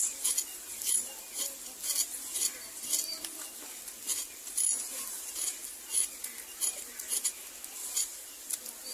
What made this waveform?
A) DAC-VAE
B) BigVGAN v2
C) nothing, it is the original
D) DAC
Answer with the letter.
C